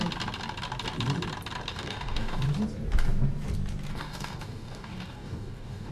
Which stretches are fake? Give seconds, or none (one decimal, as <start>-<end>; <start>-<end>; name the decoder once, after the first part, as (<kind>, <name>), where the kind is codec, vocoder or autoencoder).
1.7-2.4 (codec, DAC); 3.9-5.9